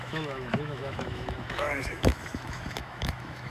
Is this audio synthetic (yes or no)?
yes